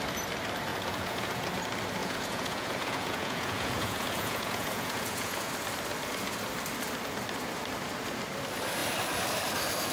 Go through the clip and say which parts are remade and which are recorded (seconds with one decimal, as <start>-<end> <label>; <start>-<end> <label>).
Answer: 0.0-0.7 recorded; 0.7-1.5 remade; 1.5-2.0 recorded; 2.0-5.5 remade; 5.5-9.9 recorded